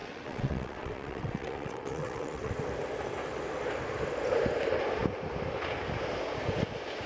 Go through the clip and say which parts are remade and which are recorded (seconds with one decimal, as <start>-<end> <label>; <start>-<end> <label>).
0.0-2.5 remade; 2.5-7.1 recorded